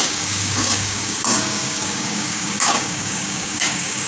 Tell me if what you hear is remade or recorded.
remade